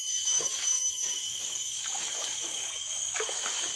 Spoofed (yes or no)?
yes